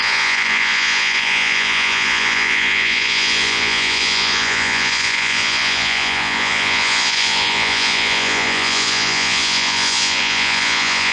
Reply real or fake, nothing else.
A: fake